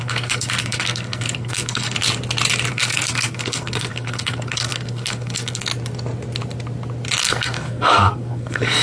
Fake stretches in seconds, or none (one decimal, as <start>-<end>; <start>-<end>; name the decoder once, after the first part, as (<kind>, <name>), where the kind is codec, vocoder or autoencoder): 0.0-2.0 (codec, SNAC); 2.7-5.7; 7.2-8.8